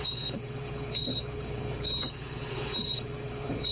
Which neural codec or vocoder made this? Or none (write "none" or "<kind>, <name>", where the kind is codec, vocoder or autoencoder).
codec, HILCodec